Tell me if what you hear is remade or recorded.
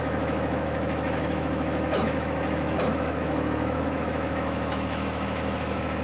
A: remade